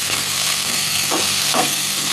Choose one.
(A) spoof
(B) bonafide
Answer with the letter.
A